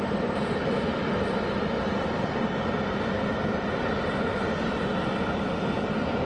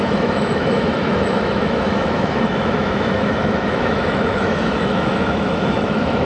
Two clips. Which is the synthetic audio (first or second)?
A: second